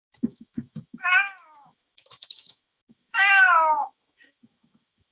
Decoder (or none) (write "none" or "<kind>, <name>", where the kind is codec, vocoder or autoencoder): autoencoder, DAC-VAE